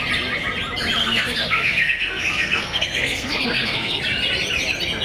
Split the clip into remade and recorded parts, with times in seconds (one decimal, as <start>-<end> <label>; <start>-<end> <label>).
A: 0.0-1.0 recorded; 1.0-4.0 remade; 4.0-5.0 recorded